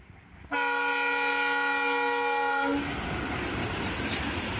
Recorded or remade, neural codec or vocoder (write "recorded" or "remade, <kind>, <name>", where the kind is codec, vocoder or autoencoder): recorded